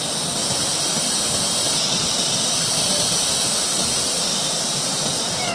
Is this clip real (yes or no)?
yes